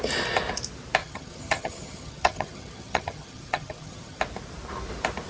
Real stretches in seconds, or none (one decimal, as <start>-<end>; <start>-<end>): 0.0-1.0; 4.2-5.3